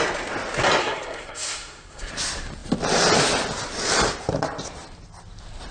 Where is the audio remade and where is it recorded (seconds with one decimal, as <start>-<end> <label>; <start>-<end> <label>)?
0.0-0.8 recorded; 0.8-2.1 remade; 2.1-5.7 recorded